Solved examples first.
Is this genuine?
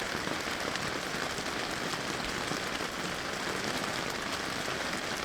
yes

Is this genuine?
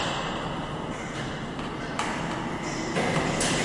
yes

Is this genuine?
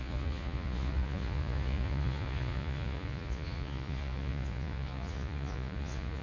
no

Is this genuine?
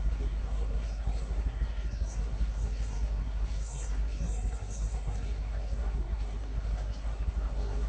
no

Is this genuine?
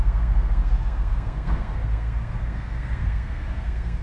no